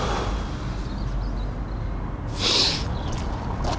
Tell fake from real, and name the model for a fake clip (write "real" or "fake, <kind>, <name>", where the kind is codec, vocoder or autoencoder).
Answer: real